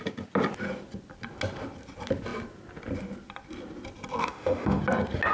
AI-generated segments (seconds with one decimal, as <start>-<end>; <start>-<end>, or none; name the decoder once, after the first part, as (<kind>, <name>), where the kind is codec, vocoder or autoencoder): 4.2-4.8 (autoencoder, DAC-VAE)